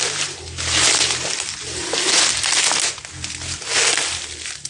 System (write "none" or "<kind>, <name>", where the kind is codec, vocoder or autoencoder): none